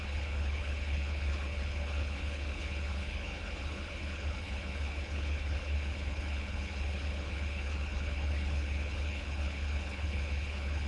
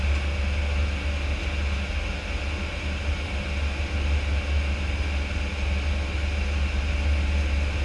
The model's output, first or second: first